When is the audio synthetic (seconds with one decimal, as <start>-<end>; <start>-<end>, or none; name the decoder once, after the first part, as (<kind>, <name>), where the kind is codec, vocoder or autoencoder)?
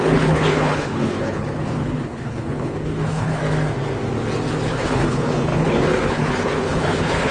0.0-3.4 (codec, HILCodec); 4.7-7.3